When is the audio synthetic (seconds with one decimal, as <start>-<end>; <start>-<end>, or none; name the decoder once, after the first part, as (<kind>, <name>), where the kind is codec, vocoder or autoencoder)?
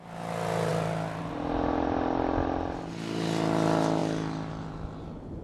none